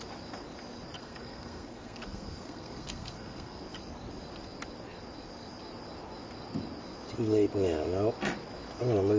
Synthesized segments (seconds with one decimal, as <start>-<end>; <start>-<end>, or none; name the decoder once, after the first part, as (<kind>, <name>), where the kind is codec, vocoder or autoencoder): 1.0-3.6 (codec, SNAC)